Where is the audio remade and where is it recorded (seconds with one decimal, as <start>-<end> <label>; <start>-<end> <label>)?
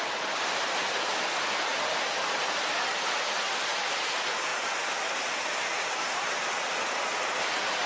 0.0-7.9 recorded